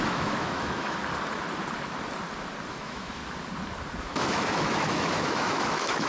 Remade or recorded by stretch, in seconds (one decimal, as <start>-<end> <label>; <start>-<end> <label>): 0.0-1.0 remade; 1.0-2.7 recorded; 2.7-3.2 remade; 3.2-4.0 recorded; 4.0-6.1 remade